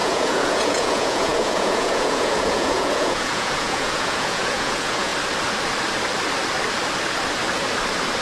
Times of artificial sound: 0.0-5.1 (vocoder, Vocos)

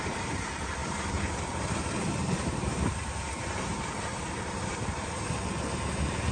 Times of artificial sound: 0.0-6.3 (vocoder, BigVGAN v2)

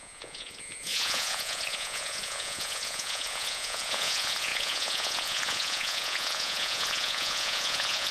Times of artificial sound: 0.0-8.1 (vocoder, Vocos)

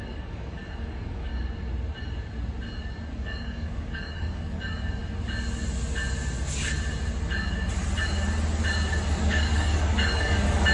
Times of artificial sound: 0.0-1.3 (codec, DAC); 3.1-5.0; 9.2-10.7